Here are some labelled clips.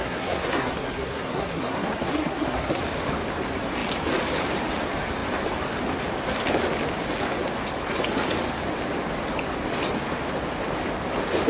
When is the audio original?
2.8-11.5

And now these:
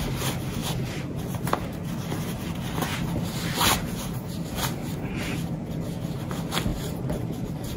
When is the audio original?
0.0-0.6; 1.2-6.7